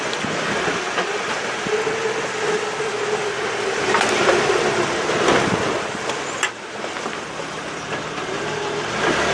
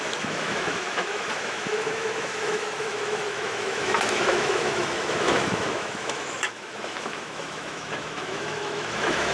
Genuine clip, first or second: first